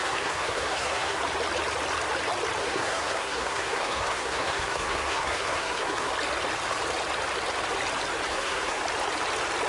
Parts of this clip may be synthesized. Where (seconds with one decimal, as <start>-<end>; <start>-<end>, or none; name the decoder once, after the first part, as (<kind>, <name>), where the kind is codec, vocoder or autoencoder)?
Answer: 0.0-1.2 (codec, SNAC); 2.6-6.1; 8.3-8.8